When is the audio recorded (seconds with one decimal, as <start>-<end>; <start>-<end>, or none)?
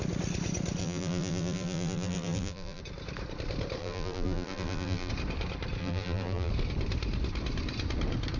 0.0-0.8; 2.8-3.8; 5.1-5.8; 6.5-8.4